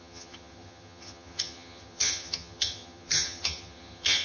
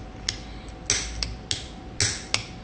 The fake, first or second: first